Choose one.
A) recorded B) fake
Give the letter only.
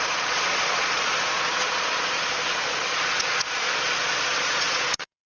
B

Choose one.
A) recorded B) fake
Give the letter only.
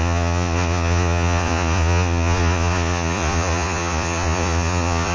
B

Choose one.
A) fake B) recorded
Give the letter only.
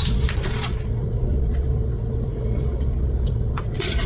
A